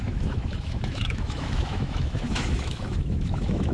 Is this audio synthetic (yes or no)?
yes